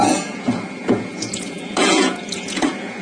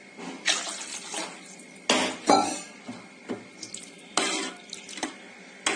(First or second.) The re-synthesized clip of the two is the first